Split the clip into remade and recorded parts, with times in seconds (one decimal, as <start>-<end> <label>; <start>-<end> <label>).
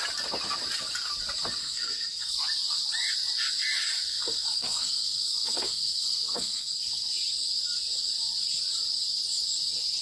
0.0-1.6 recorded; 1.6-2.4 remade; 2.4-4.1 recorded; 4.1-7.1 remade; 7.1-10.0 recorded